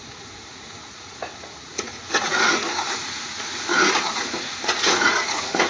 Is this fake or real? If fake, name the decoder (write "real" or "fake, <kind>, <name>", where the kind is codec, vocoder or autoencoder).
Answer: fake, vocoder, Vocos